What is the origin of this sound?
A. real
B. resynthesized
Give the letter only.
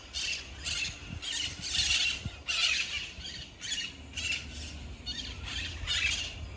A